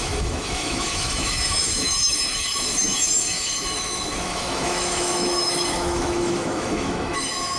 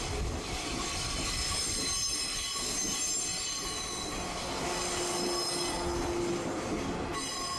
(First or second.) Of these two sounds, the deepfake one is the first